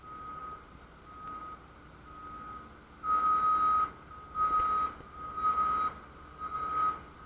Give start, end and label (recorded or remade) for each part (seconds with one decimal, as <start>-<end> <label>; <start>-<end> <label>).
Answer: 0.0-7.3 recorded